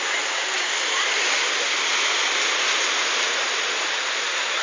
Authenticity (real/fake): real